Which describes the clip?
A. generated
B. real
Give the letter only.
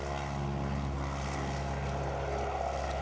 B